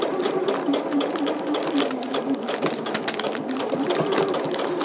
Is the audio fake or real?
real